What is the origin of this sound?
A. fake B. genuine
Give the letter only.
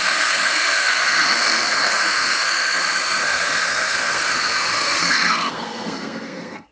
A